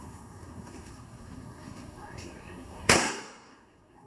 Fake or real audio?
fake